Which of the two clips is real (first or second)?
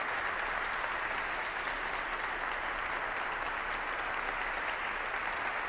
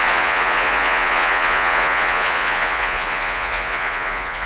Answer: first